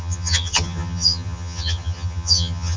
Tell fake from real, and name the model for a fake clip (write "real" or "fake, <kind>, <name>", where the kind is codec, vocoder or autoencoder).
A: fake, vocoder, HiFi-GAN